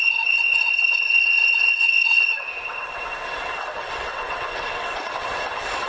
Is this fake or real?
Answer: fake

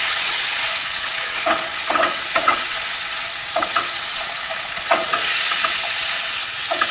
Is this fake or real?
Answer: fake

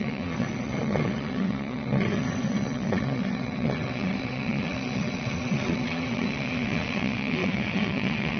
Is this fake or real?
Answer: fake